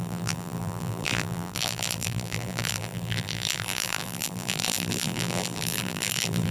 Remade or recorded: remade